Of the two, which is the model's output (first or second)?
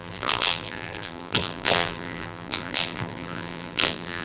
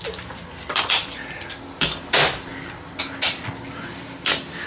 first